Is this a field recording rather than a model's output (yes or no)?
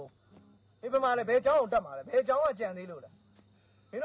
yes